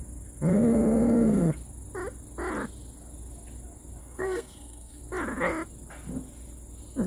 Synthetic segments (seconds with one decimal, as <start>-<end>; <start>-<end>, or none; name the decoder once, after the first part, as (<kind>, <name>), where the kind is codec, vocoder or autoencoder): 0.5-1.5 (codec, SNAC); 4.0-5.0